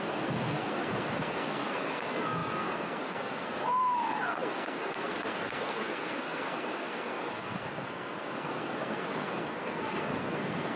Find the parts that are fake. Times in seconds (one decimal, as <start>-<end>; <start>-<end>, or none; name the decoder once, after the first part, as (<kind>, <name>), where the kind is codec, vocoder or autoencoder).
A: 0.0-10.8 (codec, SNAC)